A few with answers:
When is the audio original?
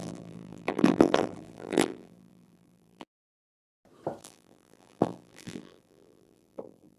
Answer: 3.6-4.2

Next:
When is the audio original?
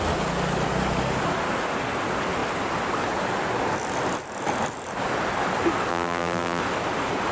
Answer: 0.0-5.9; 6.6-7.3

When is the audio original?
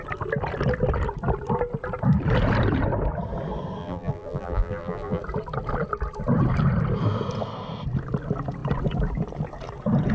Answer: 0.0-3.8; 5.2-10.1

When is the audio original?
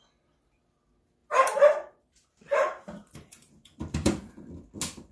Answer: 0.0-1.2; 4.3-5.1